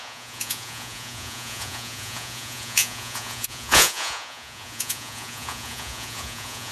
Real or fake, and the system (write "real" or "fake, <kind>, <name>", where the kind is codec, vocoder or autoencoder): fake, vocoder, Vocos